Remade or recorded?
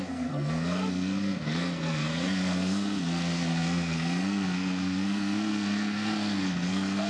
remade